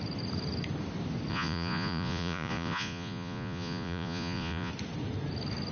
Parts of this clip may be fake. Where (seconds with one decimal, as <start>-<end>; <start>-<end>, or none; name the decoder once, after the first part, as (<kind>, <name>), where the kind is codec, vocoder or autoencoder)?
1.3-4.7 (vocoder, Vocos)